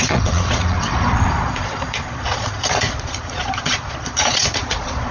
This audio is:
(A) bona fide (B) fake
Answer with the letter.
B